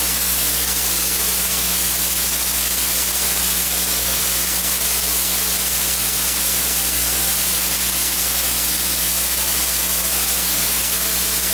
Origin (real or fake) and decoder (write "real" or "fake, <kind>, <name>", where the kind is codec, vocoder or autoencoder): fake, codec, SNAC